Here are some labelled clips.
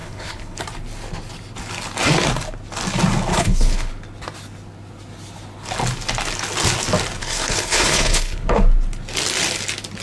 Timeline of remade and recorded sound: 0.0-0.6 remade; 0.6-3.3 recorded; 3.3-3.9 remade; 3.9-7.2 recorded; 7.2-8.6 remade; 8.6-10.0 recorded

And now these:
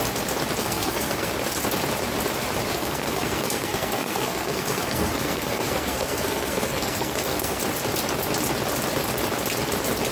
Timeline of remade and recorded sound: 0.0-0.6 recorded; 0.6-1.3 remade; 1.3-2.7 recorded; 2.7-7.6 remade; 7.6-10.1 recorded

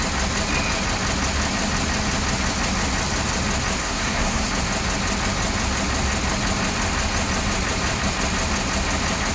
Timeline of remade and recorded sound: 0.0-3.8 recorded; 3.8-4.5 remade; 4.5-9.3 recorded

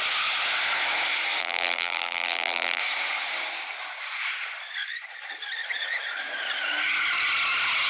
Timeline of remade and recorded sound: 0.0-1.4 recorded; 1.4-2.8 remade; 2.8-7.9 recorded